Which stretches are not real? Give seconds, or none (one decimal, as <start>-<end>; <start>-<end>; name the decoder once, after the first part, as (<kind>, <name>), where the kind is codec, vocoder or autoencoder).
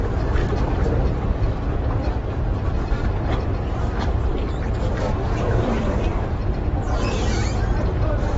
0.4-3.7 (vocoder, BigVGAN v2)